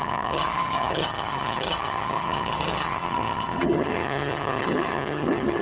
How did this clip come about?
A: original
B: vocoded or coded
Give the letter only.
B